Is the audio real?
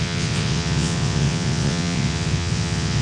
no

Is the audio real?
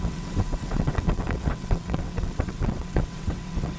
no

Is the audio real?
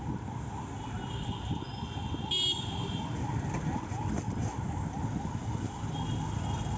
yes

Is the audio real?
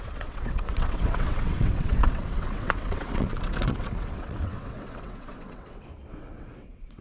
no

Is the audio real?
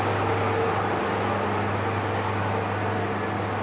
yes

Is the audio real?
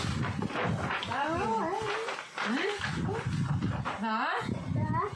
yes